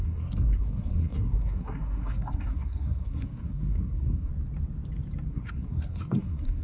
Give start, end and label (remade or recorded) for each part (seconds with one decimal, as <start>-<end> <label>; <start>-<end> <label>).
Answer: 0.0-4.3 remade; 4.3-5.3 recorded; 5.3-6.6 remade